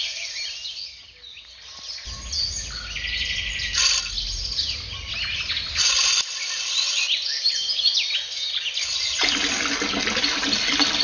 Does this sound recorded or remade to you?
recorded